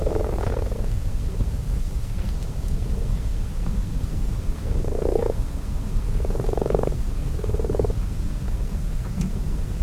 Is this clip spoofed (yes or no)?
yes